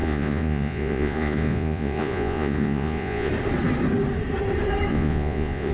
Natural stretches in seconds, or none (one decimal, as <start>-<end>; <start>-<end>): 3.3-4.9